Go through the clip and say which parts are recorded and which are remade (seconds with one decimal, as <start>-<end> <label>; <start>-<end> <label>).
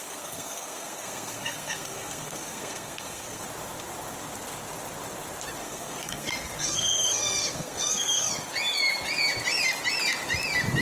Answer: 0.0-3.4 remade; 3.4-5.6 recorded; 5.6-8.3 remade; 8.3-10.8 recorded